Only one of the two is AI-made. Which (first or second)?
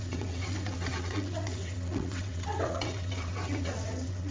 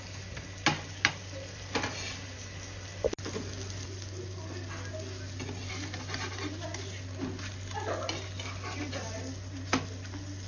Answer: first